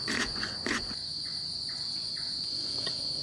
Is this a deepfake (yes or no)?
yes